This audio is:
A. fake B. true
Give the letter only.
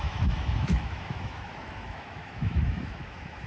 A